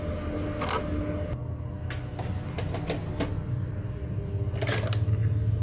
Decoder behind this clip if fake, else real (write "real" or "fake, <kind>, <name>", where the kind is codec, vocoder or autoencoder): real